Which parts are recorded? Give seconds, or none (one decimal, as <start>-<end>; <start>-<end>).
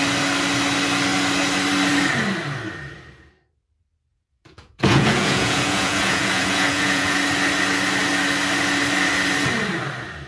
0.0-4.1; 7.2-10.3